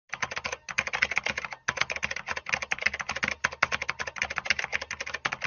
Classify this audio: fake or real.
real